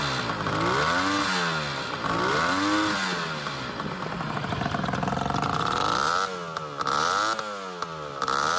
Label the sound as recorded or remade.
recorded